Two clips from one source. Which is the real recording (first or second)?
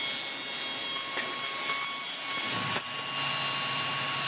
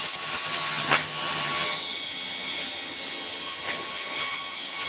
first